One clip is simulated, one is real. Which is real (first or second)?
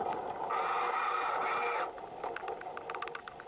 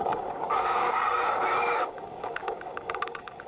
first